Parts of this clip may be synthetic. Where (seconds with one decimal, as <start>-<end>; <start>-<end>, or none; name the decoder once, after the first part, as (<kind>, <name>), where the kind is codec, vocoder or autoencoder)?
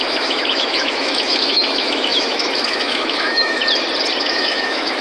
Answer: 0.0-3.6 (autoencoder, DAC-VAE); 4.2-5.0